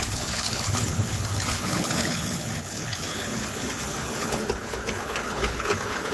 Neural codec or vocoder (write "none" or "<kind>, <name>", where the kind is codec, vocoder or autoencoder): codec, HILCodec